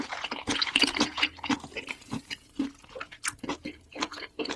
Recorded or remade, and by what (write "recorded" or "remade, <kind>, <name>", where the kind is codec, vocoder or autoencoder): remade, vocoder, Vocos